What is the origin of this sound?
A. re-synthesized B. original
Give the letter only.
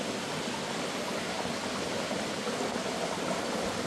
B